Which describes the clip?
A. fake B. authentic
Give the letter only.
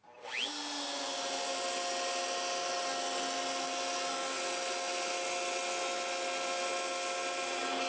B